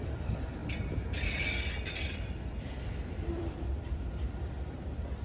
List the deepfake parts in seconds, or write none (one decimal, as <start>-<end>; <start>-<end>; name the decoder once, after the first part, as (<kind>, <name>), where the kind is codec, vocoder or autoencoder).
0.0-0.6 (vocoder, BigVGAN v2); 1.7-5.2